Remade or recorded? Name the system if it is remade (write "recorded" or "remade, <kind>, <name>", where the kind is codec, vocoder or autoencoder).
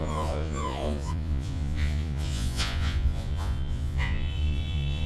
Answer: remade, vocoder, Vocos